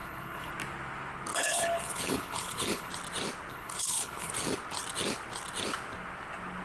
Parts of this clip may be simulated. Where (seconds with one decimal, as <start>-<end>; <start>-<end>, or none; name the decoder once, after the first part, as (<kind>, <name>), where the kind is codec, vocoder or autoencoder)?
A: 0.0-0.5 (codec, HILCodec); 1.3-2.9; 3.5-4.3